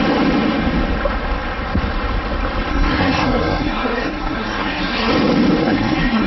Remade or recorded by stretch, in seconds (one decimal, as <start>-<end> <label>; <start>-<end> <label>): 0.0-2.7 recorded; 2.7-5.1 remade; 5.1-5.6 recorded; 5.6-6.3 remade